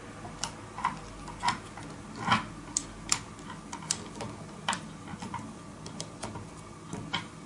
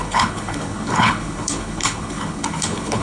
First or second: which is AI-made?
second